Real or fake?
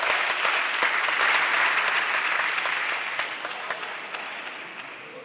real